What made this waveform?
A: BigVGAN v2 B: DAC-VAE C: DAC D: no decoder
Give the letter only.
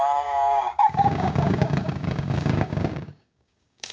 C